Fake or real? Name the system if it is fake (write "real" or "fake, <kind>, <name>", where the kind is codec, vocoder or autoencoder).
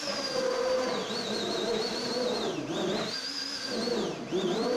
real